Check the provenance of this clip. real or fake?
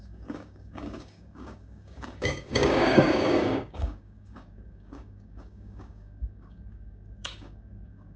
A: fake